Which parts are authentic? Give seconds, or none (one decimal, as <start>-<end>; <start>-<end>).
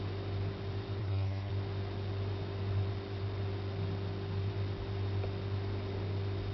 0.0-1.0; 1.5-6.5